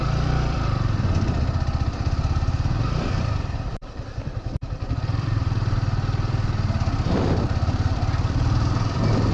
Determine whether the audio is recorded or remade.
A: remade